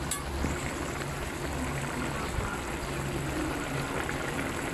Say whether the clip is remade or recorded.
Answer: remade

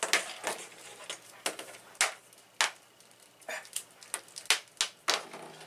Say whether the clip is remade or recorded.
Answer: recorded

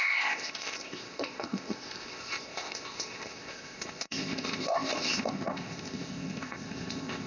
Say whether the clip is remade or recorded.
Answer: remade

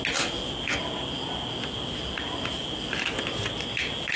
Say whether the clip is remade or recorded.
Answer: recorded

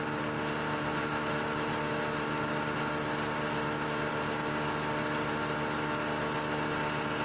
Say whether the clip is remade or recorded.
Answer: recorded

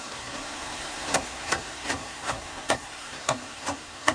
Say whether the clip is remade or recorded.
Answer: remade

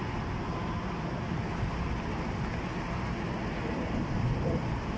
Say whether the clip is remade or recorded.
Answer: recorded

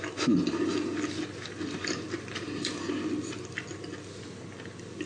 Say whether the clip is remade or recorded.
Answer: recorded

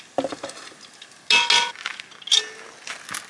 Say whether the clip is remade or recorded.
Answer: recorded